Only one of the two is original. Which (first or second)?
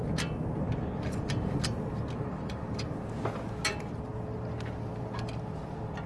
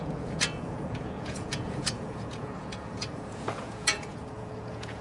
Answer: first